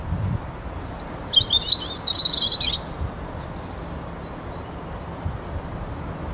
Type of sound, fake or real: real